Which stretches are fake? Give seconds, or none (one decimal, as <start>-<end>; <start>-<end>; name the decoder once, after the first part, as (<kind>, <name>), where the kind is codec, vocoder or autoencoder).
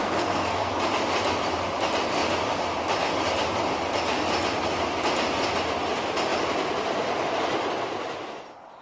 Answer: 0.0-0.7 (codec, SNAC)